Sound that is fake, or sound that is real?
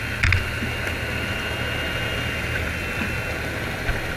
real